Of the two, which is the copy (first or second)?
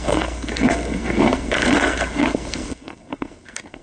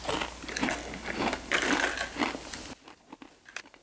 first